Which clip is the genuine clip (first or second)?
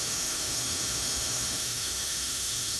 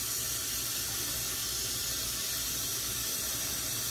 second